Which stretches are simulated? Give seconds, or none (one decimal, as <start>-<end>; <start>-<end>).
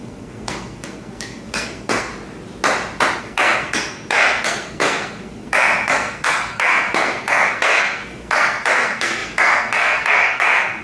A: 0.0-2.1; 3.2-10.8